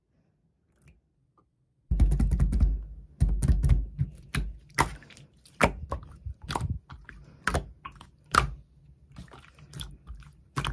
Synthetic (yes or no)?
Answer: no